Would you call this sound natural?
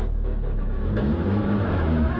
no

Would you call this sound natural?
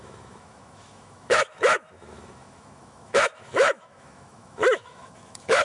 no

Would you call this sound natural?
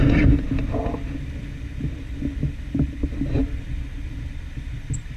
yes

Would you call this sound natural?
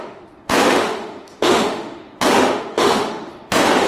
no